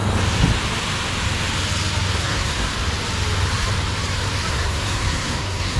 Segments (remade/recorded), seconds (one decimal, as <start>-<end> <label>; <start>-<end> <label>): 0.0-2.2 recorded; 2.2-2.7 remade; 2.7-4.5 recorded; 4.5-5.8 remade